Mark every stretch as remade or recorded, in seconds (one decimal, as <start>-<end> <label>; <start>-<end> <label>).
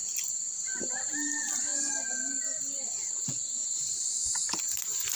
0.0-5.2 recorded